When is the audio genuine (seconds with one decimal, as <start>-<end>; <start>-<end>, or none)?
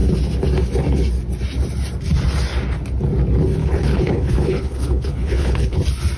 0.0-3.6; 5.8-6.2